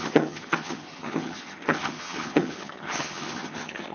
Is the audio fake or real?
fake